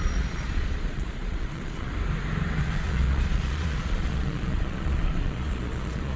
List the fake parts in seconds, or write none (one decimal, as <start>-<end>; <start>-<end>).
0.0-1.9; 2.6-6.2